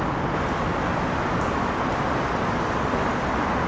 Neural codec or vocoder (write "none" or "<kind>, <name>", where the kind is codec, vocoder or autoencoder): none